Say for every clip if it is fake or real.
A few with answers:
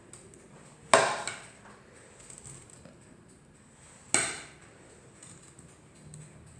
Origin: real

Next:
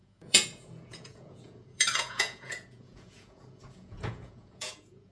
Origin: fake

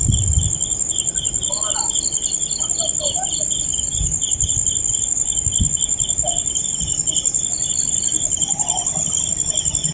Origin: real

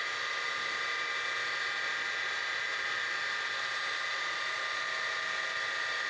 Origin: real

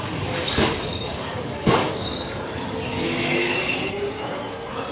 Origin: fake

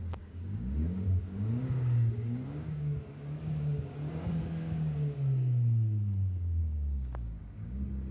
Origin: fake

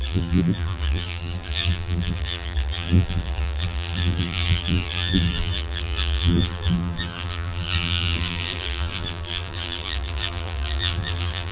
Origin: fake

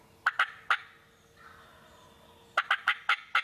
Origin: real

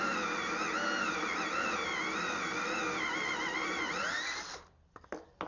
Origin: real